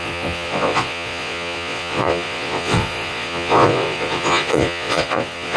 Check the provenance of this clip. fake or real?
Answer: fake